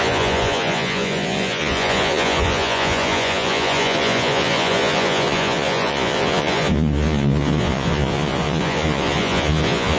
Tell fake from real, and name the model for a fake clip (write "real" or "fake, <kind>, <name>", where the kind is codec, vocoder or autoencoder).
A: fake, vocoder, Vocos